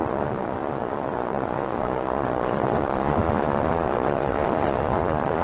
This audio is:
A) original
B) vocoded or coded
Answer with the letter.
B